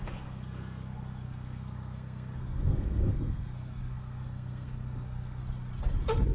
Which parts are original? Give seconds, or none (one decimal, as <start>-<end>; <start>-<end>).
5.4-6.3

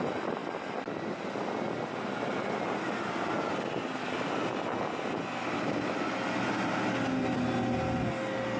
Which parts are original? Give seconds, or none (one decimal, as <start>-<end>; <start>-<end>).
0.0-8.6

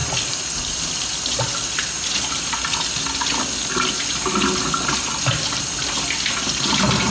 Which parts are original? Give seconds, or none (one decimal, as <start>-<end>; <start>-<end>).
0.0-7.1

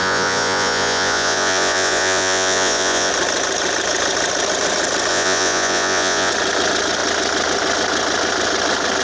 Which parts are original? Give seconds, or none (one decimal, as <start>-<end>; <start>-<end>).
3.1-5.1; 6.3-9.0

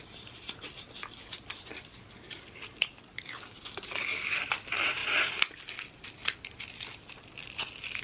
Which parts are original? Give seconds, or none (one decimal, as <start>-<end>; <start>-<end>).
0.0-1.9; 4.4-8.0

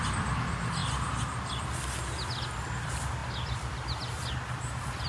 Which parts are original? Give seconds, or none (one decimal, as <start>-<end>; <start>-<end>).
0.0-5.1